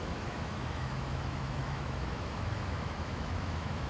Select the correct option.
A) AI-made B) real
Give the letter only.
A